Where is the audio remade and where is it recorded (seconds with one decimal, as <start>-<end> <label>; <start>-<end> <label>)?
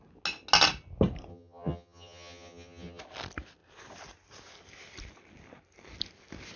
0.0-1.3 recorded; 1.3-3.0 remade; 3.0-6.6 recorded